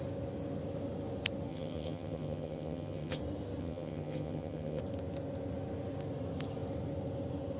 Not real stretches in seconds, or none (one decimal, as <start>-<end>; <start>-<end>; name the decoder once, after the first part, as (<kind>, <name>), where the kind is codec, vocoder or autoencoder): 1.5-3.2 (vocoder, HiFi-GAN); 3.6-4.8